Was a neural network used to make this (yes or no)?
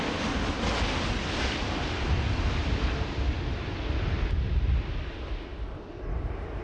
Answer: no